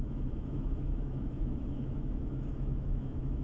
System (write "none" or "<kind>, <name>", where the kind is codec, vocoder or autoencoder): autoencoder, DAC-VAE